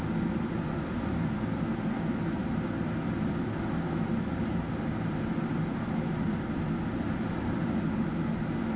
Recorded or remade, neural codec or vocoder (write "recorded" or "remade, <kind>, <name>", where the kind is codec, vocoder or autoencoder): recorded